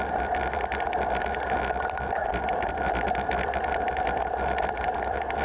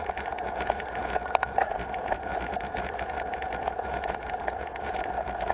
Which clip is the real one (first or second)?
first